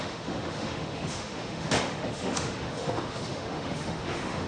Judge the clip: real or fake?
fake